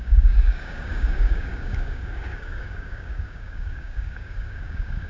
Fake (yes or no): yes